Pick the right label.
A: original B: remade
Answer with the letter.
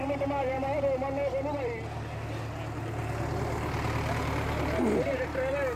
A